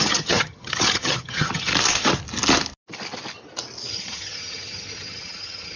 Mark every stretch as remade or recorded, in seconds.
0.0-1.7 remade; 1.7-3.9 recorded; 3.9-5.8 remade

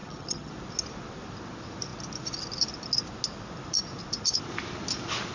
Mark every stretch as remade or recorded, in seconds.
0.0-0.5 remade; 0.5-5.3 recorded

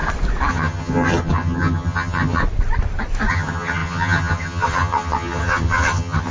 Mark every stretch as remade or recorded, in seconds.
0.0-0.5 recorded; 0.5-2.4 remade; 2.4-3.3 recorded; 3.3-6.3 remade

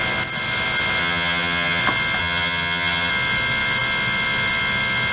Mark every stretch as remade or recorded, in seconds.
0.0-1.0 recorded; 1.0-1.8 remade; 1.8-2.2 recorded; 2.2-3.1 remade; 3.1-5.1 recorded